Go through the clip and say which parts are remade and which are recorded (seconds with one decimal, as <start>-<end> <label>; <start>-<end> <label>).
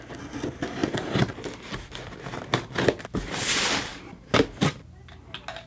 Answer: 0.0-0.8 recorded; 0.8-1.7 remade; 1.7-5.7 recorded